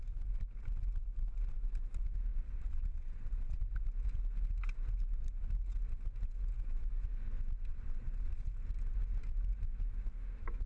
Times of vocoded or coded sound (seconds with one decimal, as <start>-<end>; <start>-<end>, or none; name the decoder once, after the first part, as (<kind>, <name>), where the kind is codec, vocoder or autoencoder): 2.3-3.6 (vocoder, Vocos); 7.7-8.5